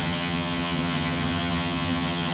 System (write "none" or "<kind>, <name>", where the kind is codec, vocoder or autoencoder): vocoder, HiFi-GAN